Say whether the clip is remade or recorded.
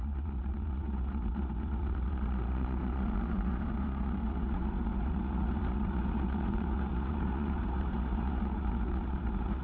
remade